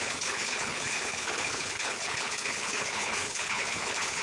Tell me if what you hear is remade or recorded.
remade